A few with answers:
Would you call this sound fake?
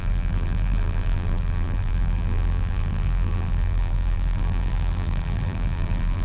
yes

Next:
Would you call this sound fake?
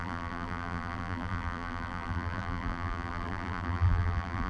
yes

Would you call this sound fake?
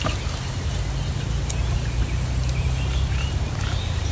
no